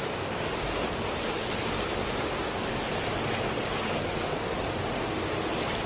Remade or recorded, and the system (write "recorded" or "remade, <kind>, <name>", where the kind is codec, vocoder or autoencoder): recorded